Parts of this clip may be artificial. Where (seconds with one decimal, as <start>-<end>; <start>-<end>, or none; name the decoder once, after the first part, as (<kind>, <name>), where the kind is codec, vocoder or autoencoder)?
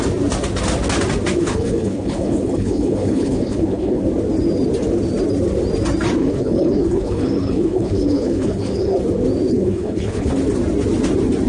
1.4-4.0 (codec, HILCodec); 6.2-9.0; 9.5-10.3